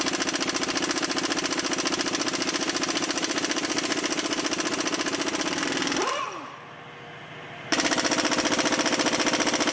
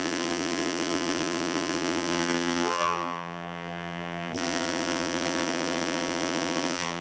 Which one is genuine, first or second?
first